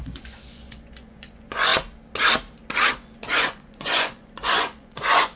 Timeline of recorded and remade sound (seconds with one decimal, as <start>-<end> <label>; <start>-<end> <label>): 0.0-1.7 remade; 1.7-2.9 recorded; 2.9-5.4 remade